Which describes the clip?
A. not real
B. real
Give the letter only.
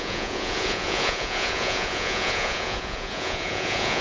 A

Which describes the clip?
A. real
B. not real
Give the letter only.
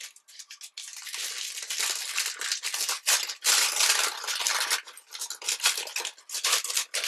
A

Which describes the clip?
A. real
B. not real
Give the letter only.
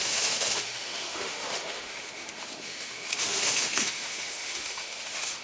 B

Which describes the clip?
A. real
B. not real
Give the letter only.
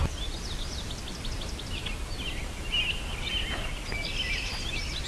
A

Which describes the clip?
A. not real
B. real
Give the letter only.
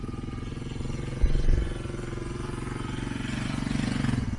A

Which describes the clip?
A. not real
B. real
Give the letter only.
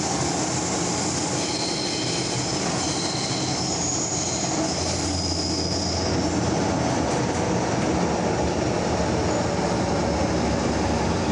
B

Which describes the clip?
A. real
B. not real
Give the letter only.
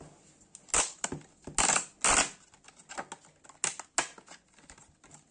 A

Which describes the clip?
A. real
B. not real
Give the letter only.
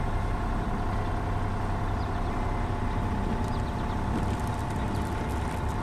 A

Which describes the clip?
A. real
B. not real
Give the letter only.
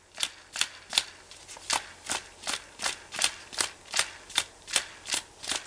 A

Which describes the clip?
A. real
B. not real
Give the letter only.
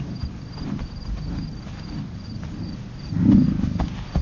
A